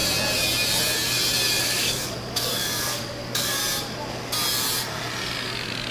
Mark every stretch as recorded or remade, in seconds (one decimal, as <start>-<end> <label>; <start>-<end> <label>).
0.0-1.6 recorded; 1.6-3.6 remade; 3.6-5.9 recorded